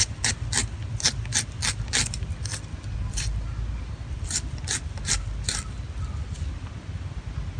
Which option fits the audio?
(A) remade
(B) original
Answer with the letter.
B